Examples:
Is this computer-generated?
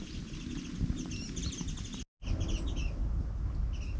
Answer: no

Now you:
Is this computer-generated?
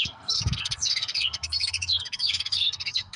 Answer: yes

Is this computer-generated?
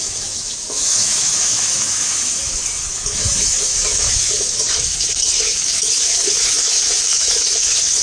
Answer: yes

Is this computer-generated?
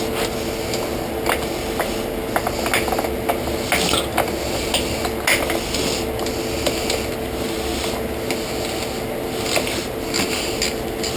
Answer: no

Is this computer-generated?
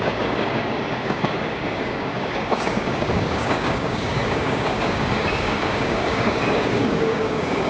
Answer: yes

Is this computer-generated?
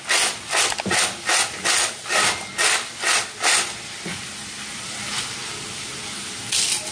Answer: no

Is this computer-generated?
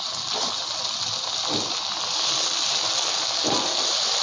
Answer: no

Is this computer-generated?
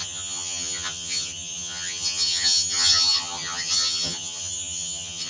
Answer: yes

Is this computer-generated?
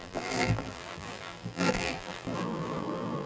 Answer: yes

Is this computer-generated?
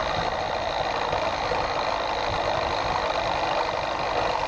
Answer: no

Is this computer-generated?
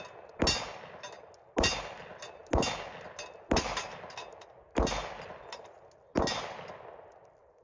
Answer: no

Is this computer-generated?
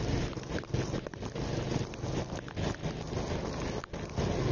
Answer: no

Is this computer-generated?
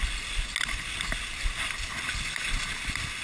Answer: no